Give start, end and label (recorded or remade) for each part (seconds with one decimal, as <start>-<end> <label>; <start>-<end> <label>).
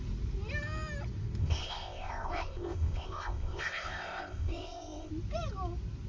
0.0-1.4 recorded; 1.4-5.1 remade; 5.1-6.1 recorded